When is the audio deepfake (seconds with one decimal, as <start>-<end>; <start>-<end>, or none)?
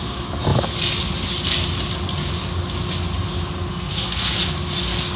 3.7-4.4